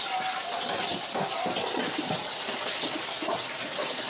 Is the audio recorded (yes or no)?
yes